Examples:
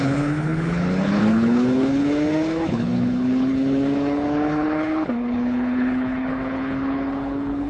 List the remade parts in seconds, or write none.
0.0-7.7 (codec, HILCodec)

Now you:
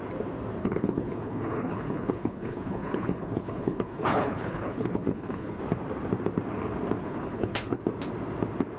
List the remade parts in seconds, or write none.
0.6-5.6 (codec, HILCodec); 7.0-7.8

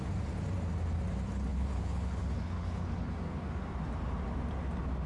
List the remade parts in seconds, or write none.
1.5-3.1 (codec, HILCodec)

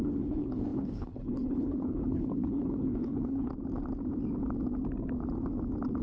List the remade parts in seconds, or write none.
0.0-3.5 (codec, HILCodec)

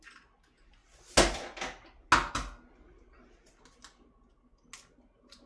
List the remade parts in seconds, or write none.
none

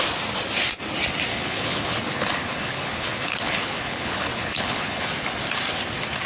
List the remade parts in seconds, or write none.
1.3-5.1 (codec, HILCodec)

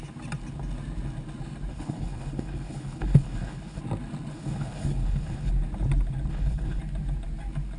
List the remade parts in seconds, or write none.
1.7-3.8 (codec, HILCodec); 4.3-5.5; 6.3-6.8

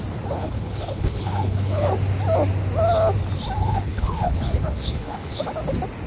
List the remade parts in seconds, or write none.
0.4-1.9 (codec, HILCodec); 3.6-5.4